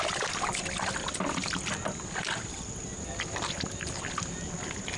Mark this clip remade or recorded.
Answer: recorded